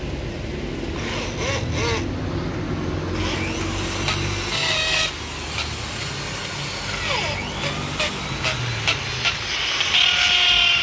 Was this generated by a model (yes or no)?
no